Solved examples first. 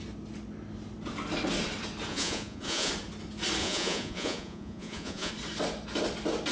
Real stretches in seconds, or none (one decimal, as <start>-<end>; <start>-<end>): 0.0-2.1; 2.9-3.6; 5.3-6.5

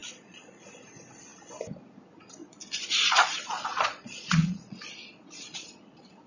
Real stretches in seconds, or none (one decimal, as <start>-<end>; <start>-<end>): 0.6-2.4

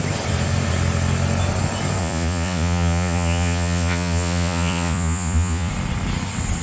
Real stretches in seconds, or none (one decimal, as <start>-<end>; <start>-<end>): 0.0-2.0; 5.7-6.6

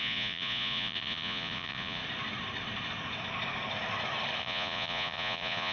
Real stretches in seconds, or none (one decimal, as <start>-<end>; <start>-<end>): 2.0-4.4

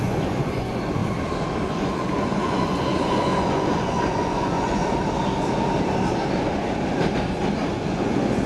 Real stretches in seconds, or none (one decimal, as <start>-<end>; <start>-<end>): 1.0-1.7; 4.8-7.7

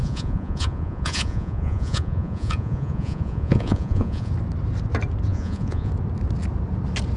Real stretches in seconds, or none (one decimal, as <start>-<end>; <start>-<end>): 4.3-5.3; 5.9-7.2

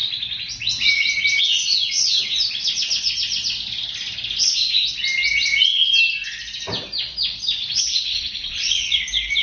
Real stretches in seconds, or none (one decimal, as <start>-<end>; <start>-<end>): 0.0-7.6; 9.0-9.4